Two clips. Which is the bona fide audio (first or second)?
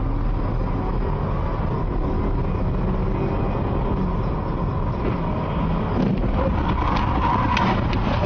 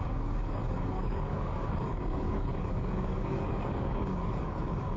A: first